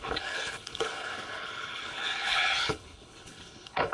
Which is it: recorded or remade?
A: remade